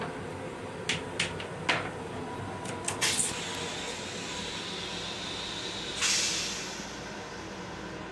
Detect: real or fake real